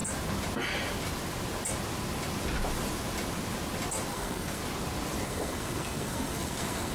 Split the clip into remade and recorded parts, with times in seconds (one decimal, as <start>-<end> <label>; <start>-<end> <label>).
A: 0.0-4.1 recorded; 4.1-4.6 remade; 4.6-5.2 recorded; 5.2-6.9 remade